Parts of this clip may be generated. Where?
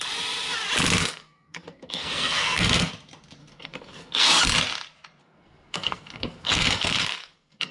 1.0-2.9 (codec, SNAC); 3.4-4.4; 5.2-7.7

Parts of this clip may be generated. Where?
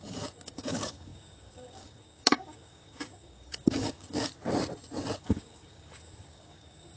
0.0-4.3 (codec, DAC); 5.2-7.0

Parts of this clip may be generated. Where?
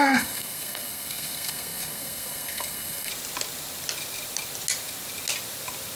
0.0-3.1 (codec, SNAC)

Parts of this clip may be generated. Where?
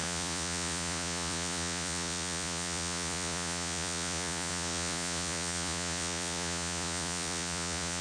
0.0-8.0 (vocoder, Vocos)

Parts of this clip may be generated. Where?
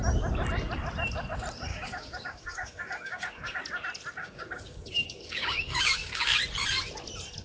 1.7-3.6 (codec, DAC); 4.2-6.2